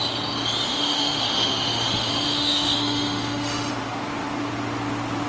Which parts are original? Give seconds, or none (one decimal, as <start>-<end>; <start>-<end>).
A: 0.0-0.7; 3.7-5.3